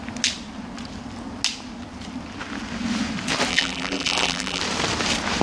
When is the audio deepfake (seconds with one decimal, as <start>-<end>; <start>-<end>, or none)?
3.5-4.6

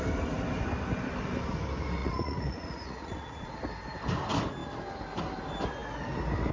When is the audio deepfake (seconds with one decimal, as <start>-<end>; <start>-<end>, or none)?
2.0-3.5

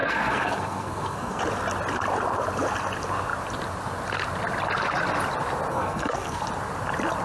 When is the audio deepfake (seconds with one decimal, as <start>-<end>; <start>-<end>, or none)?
0.0-1.4; 5.7-6.4

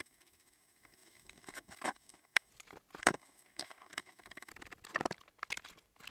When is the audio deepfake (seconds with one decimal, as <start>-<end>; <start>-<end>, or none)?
0.0-2.5; 3.0-4.5

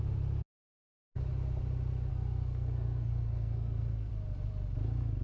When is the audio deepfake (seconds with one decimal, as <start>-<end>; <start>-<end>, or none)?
2.1-4.1